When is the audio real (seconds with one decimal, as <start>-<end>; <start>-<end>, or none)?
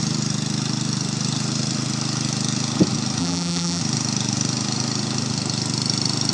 0.0-3.2; 3.8-6.3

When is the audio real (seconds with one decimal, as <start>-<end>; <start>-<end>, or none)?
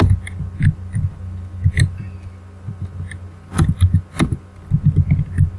0.0-5.6